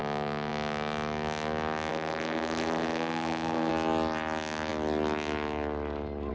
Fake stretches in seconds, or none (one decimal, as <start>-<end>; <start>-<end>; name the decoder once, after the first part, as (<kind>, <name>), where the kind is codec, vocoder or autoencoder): 1.9-3.7 (codec, SNAC)